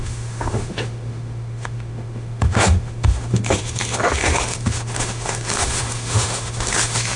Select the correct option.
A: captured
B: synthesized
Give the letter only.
B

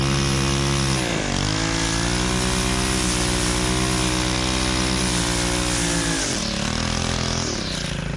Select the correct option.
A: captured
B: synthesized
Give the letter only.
A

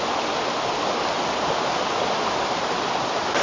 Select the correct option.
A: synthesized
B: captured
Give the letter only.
B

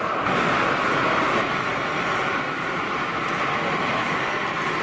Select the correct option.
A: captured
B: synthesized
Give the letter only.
A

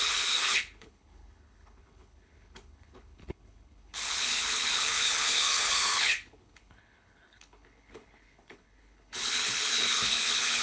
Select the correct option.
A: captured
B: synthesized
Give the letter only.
B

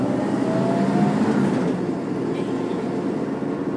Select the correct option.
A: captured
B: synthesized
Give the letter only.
A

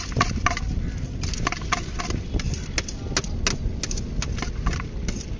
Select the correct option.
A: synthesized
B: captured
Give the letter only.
B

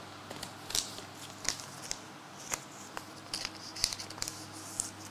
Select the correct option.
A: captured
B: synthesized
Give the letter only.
A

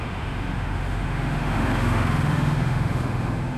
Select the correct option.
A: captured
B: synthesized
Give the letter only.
B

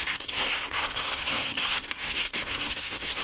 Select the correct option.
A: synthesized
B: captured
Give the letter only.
A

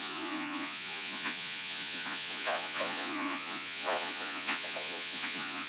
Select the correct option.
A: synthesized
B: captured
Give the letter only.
A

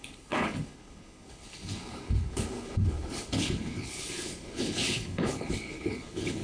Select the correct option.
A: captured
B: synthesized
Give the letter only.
B